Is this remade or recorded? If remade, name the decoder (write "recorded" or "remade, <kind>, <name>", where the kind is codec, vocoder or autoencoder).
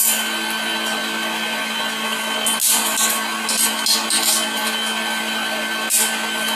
recorded